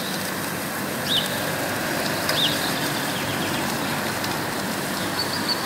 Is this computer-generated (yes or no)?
yes